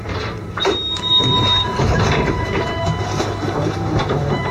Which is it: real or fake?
fake